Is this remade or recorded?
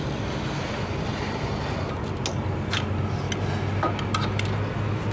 recorded